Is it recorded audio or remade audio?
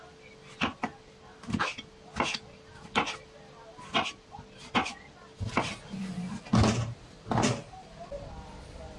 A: recorded